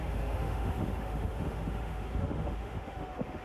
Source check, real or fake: fake